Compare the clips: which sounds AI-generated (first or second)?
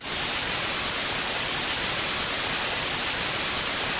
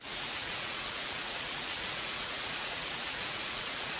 second